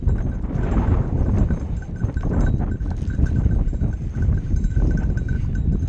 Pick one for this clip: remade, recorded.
recorded